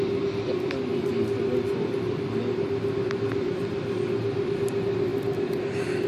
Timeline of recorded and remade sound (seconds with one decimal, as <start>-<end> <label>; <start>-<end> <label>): 0.0-0.9 recorded; 0.9-4.6 remade; 4.6-5.1 recorded; 5.1-6.1 remade